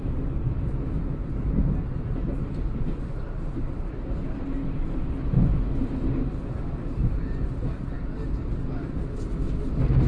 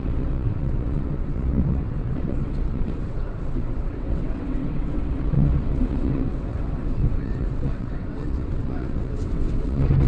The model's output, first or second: second